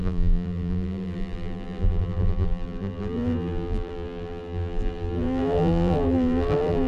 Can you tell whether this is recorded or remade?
remade